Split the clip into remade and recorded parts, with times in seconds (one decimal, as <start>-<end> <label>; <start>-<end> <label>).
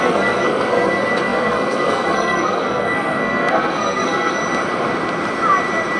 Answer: 0.0-4.4 remade; 4.4-6.0 recorded